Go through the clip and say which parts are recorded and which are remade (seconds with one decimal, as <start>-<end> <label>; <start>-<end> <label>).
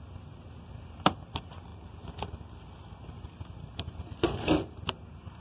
0.0-5.4 recorded